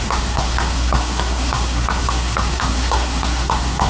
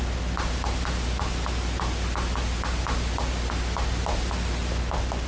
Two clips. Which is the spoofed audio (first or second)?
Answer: first